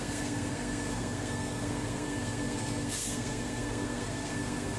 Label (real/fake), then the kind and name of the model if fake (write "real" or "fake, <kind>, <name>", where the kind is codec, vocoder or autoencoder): fake, codec, SNAC